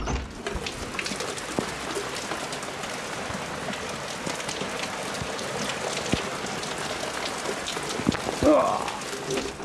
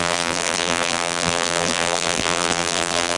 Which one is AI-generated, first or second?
second